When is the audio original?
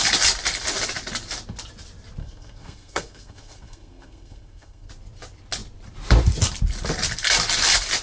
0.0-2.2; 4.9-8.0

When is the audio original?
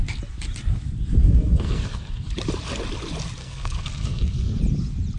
0.0-1.2; 2.3-3.4; 4.6-5.2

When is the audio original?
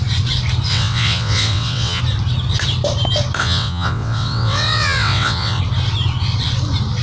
0.0-0.7; 2.0-3.4; 5.6-7.0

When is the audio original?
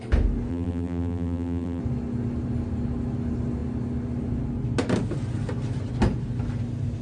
0.0-0.5; 1.8-7.0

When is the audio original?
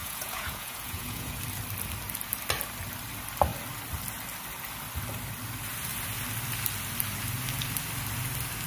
1.4-8.7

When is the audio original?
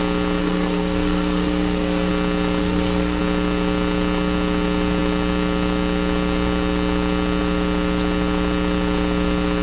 0.0-0.4; 2.1-2.6; 3.2-9.6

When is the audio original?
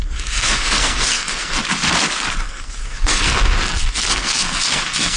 1.6-2.4